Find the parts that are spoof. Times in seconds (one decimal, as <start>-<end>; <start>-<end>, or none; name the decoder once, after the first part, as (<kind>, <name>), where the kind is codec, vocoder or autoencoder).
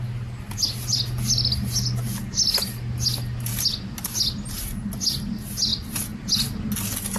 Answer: none